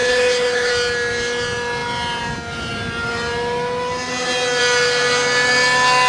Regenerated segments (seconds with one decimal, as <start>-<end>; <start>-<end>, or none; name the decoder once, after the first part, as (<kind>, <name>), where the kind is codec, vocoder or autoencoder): 0.0-0.7 (codec, HILCodec)

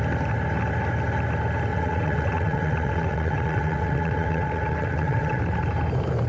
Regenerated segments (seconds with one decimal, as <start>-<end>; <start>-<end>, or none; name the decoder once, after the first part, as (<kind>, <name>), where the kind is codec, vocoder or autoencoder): 1.7-5.4 (vocoder, WaveNeXt)

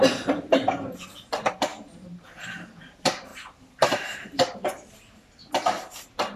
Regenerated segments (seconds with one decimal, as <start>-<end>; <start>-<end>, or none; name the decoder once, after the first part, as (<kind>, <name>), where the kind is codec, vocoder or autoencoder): 1.7-2.8 (vocoder, BigVGAN v2); 3.3-5.5

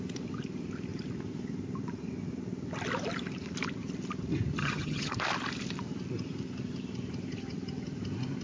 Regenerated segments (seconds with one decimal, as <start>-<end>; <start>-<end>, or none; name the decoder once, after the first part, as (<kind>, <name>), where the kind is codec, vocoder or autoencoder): 4.6-5.1 (vocoder, HiFi-GAN)

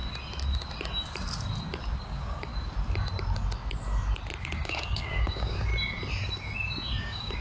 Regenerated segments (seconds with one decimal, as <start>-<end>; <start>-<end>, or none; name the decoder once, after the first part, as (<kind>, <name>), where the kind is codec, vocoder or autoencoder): 2.0-2.5 (codec, DAC); 4.4-5.7; 7.0-7.4

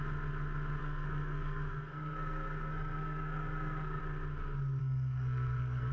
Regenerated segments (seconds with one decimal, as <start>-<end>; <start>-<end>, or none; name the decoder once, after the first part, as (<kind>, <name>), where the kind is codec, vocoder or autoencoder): 0.8-4.0 (codec, SNAC); 4.8-5.9